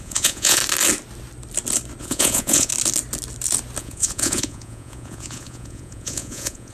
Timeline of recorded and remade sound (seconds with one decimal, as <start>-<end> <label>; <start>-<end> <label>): 0.0-0.6 remade; 0.6-2.0 recorded; 2.0-2.7 remade; 2.7-3.8 recorded; 3.8-6.7 remade